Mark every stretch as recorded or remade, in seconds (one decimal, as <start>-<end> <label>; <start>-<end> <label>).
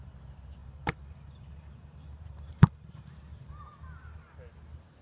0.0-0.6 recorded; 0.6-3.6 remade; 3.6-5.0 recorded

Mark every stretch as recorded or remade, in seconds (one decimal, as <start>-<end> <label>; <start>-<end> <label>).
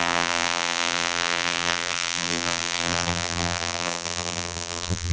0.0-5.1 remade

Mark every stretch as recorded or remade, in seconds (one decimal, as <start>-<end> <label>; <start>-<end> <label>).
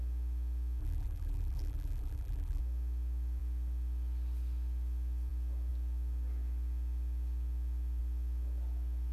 0.0-0.8 recorded; 0.8-2.6 remade; 2.6-9.1 recorded